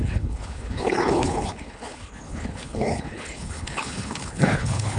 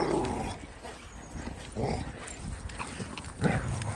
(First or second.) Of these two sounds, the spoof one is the first